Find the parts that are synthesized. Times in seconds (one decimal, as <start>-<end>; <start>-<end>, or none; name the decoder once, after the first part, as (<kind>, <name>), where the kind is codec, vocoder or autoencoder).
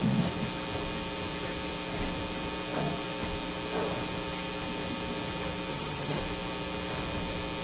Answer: 5.7-6.2 (vocoder, HiFi-GAN)